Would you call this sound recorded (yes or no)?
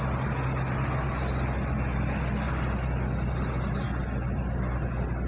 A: yes